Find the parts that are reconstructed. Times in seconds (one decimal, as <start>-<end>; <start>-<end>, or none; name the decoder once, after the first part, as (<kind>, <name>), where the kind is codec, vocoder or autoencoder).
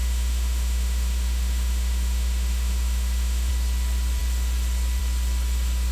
0.0-3.5 (autoencoder, DAC-VAE)